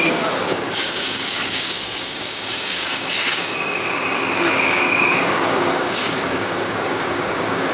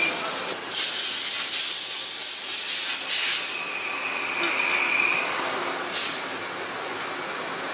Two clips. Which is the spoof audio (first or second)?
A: first